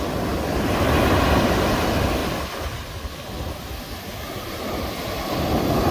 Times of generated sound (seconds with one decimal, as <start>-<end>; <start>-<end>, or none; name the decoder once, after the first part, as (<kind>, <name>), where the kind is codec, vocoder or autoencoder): none